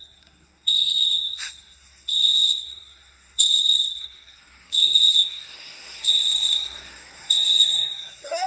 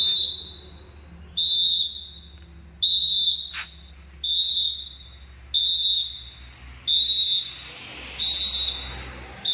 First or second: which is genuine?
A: second